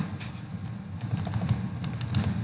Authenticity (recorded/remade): recorded